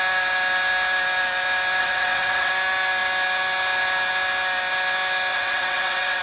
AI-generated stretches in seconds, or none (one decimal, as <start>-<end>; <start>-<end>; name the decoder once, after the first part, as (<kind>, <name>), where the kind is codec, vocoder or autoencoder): 1.8-2.5 (vocoder, WaveNeXt); 5.3-6.2